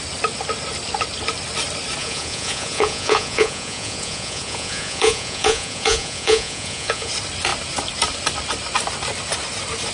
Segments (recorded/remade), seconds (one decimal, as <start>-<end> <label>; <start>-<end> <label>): 0.0-2.0 recorded; 2.0-7.1 remade; 7.1-9.9 recorded